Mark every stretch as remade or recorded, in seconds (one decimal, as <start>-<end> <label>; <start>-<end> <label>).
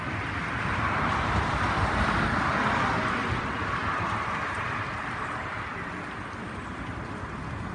0.0-7.7 recorded